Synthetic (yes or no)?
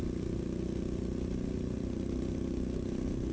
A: no